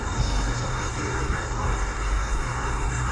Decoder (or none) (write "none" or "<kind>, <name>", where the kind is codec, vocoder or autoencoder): codec, SNAC